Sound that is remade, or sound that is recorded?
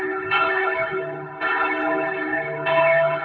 remade